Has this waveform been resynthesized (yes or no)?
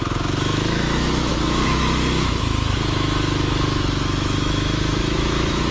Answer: yes